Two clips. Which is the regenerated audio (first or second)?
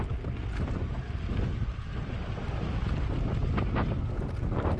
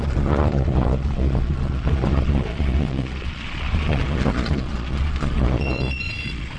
second